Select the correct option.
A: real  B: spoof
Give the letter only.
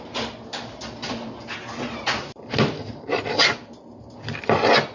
A